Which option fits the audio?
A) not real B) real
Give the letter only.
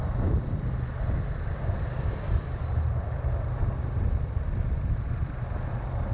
B